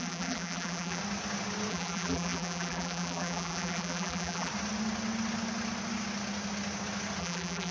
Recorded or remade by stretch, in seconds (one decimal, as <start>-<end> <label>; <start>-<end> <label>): 0.0-1.0 remade; 1.0-1.7 recorded; 1.7-4.5 remade; 4.5-7.2 recorded; 7.2-7.7 remade